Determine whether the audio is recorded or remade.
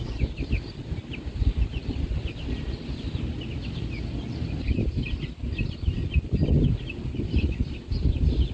recorded